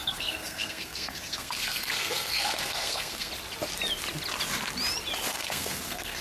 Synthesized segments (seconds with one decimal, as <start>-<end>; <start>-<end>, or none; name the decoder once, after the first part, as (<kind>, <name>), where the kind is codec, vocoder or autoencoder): 0.0-3.3 (codec, SNAC); 5.3-6.2